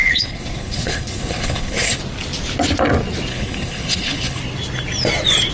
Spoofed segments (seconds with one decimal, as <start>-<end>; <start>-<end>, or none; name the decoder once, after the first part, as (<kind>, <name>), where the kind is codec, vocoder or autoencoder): 0.0-2.0 (codec, HILCodec); 3.3-4.4